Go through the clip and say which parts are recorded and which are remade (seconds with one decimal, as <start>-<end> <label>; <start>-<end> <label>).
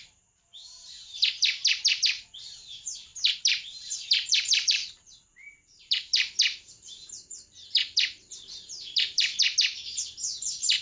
0.0-9.4 remade; 9.4-10.3 recorded; 10.3-10.8 remade